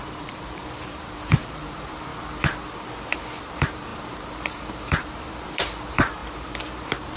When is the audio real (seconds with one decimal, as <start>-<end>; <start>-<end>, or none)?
2.1-3.4